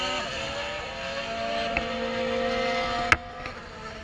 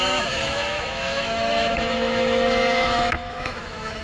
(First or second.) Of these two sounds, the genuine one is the first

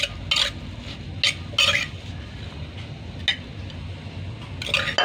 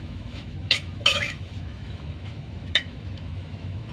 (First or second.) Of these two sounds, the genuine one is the first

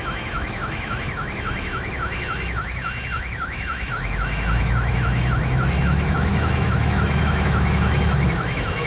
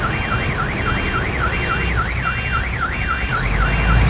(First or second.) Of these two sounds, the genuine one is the second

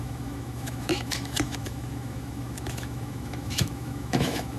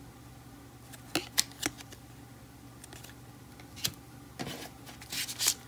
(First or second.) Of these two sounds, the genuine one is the second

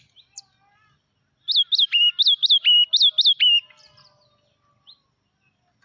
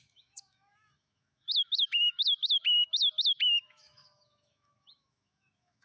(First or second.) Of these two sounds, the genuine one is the first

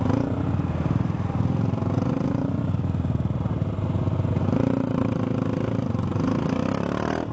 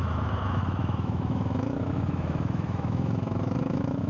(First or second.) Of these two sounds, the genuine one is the first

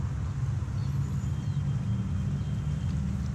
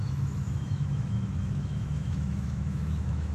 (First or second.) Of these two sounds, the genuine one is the first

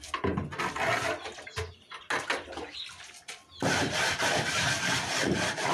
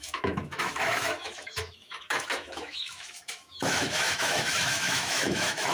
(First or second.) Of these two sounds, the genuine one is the first